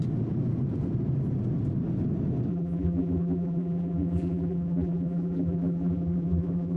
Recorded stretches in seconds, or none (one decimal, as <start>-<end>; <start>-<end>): 0.0-2.5